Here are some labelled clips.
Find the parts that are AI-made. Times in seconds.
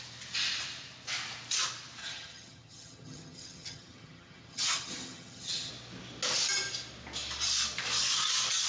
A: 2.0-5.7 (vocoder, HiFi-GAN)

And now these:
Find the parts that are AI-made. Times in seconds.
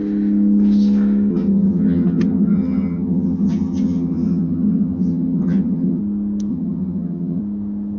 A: 1.3-6.0 (vocoder, HiFi-GAN); 6.5-7.4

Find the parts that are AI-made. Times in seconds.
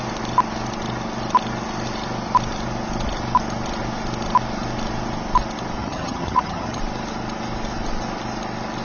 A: 5.8-6.8 (vocoder, HiFi-GAN)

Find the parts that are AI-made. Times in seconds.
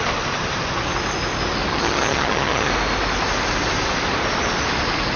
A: 1.7-2.7 (vocoder, HiFi-GAN)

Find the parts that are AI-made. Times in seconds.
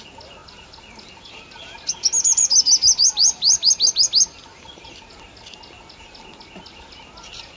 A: none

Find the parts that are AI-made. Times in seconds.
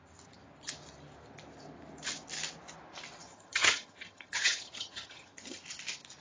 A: 3.2-5.6 (vocoder, HiFi-GAN)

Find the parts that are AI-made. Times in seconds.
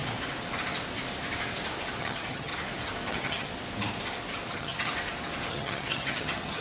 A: 2.0-2.5 (vocoder, HiFi-GAN); 3.1-3.5; 4.5-4.9; 5.5-6.6